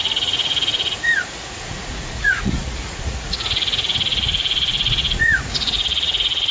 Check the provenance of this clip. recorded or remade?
remade